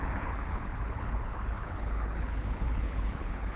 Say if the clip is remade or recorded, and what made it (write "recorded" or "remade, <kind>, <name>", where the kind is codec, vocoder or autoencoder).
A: remade, codec, HILCodec